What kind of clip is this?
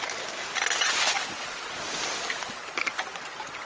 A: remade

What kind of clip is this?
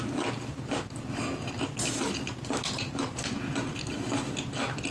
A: recorded